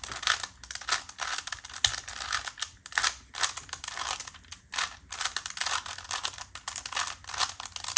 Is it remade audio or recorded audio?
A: recorded